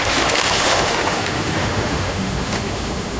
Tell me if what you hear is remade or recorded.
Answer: remade